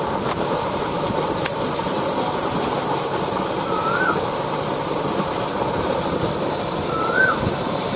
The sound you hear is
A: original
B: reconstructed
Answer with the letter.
B